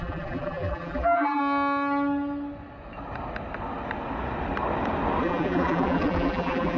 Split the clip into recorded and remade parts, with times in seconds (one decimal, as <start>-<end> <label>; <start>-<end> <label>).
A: 0.0-1.4 remade; 1.4-5.2 recorded; 5.2-6.8 remade